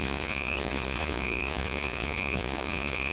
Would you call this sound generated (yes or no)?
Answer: yes